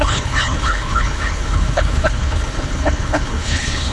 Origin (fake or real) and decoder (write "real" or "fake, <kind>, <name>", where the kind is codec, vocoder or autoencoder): fake, codec, HILCodec